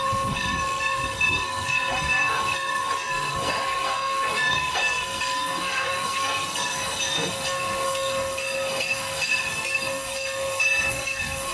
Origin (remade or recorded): remade